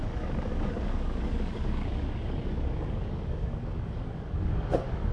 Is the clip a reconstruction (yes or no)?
yes